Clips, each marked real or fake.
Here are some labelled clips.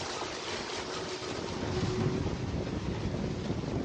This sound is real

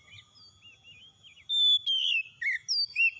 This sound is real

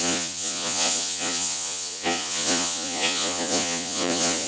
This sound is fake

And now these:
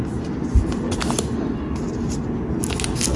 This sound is real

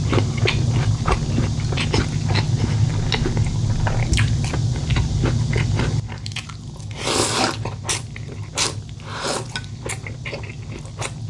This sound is real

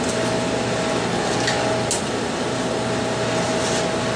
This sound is real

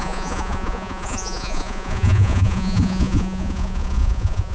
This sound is fake